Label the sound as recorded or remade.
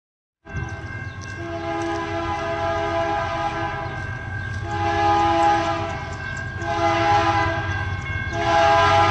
recorded